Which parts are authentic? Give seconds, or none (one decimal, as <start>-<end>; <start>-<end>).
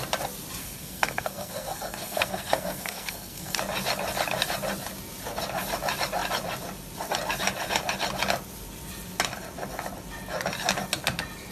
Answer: 0.0-0.6; 3.6-11.5